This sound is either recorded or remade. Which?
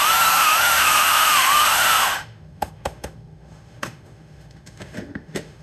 remade